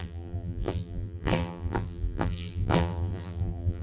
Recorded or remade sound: remade